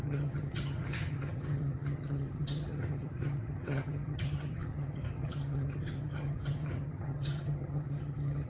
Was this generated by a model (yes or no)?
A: yes